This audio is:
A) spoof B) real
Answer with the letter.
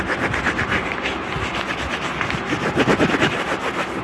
B